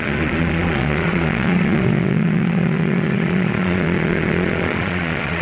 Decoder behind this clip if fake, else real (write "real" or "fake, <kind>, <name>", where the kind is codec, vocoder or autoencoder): fake, vocoder, Vocos